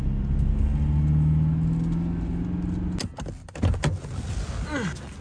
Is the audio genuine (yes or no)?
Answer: yes